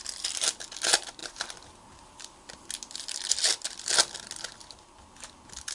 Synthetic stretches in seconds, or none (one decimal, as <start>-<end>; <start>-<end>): none